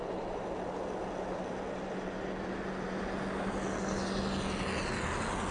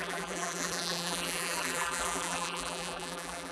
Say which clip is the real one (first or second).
first